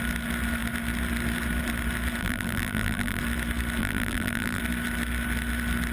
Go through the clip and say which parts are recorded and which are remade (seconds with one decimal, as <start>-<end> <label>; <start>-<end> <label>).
0.0-2.2 recorded; 2.2-3.2 remade; 3.2-3.8 recorded; 3.8-4.6 remade; 4.6-5.9 recorded